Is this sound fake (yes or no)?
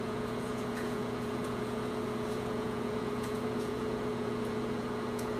yes